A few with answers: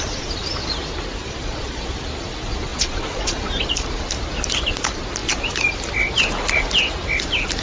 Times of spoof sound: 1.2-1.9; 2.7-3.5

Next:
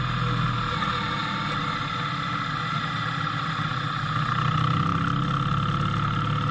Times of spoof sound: none

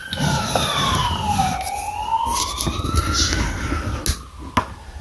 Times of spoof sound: none

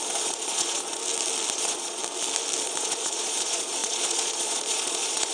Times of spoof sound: 0.0-1.0; 1.5-2.0; 2.6-5.3

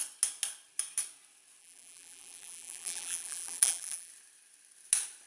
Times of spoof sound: 1.6-4.1

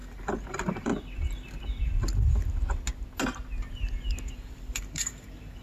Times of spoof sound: 0.0-0.9; 4.3-5.6